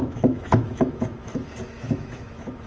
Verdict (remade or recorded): remade